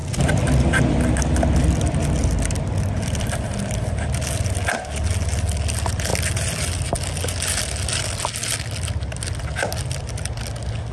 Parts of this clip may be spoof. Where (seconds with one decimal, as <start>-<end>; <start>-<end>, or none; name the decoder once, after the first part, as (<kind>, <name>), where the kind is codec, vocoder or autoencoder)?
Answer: 0.0-0.8 (vocoder, BigVGAN v2)